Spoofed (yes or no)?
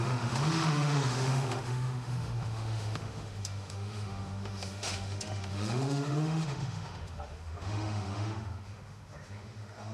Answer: yes